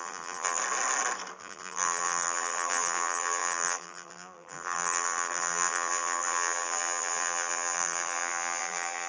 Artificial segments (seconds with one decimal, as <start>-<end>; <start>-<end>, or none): 0.0-0.6; 1.4-9.1